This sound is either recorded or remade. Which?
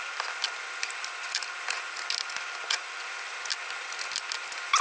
recorded